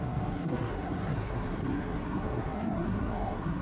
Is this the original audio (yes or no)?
no